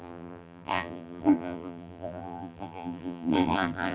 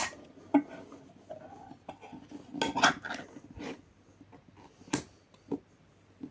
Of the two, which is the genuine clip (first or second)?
second